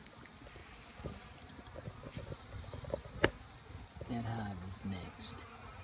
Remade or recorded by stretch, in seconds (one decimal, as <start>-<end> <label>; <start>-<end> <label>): 0.0-5.8 recorded